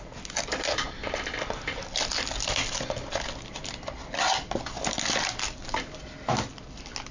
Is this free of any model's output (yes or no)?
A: yes